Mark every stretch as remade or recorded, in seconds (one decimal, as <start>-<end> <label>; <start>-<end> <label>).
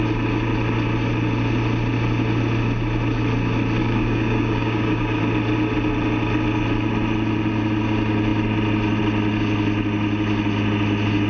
0.0-3.8 recorded; 3.8-5.2 remade; 5.2-11.3 recorded